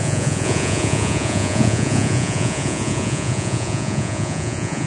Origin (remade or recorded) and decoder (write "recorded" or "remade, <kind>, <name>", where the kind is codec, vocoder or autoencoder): remade, vocoder, Vocos